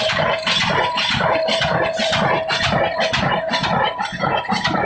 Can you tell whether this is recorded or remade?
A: remade